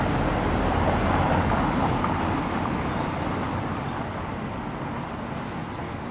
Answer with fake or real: real